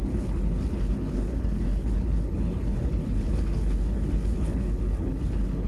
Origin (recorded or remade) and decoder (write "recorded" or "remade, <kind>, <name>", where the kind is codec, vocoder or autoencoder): remade, codec, HILCodec